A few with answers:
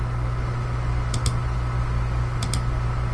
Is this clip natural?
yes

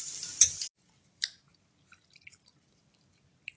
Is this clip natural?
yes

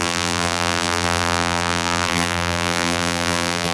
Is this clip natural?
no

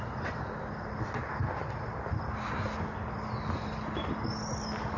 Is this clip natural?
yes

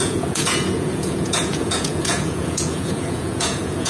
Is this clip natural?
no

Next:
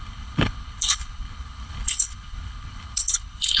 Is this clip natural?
no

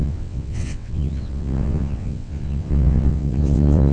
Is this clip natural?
no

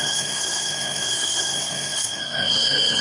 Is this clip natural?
no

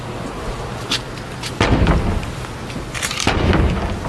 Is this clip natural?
yes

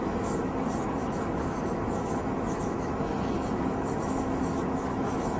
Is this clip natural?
no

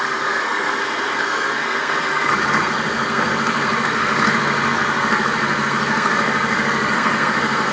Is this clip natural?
no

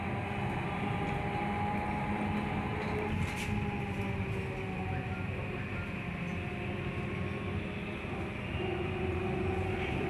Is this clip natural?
yes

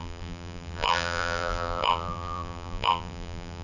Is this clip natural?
no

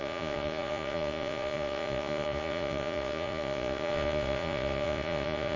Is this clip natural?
no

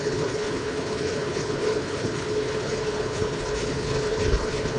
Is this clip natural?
no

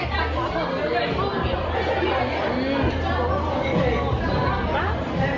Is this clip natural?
yes